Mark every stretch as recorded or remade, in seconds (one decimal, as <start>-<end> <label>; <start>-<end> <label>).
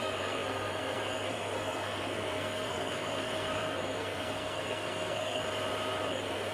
0.0-5.4 remade; 5.4-6.1 recorded; 6.1-6.5 remade